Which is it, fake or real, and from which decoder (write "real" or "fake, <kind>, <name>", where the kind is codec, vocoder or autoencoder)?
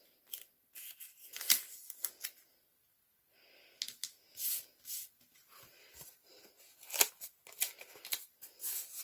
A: real